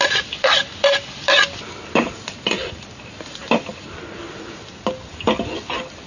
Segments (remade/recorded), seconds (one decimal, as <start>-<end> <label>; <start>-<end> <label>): 0.0-6.1 recorded